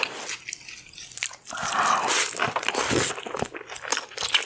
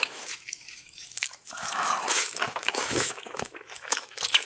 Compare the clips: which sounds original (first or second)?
first